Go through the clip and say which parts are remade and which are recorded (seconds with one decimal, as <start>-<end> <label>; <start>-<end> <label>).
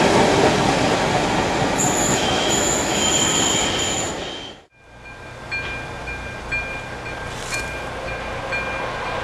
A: 0.0-2.0 recorded; 2.0-3.1 remade; 3.1-9.2 recorded